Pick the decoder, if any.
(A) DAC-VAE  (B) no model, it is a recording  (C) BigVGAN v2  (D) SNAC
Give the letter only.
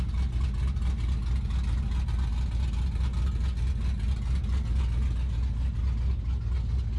B